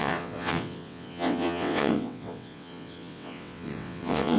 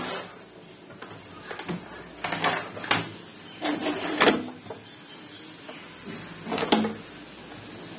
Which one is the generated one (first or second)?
first